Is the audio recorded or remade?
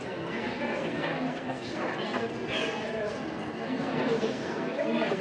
remade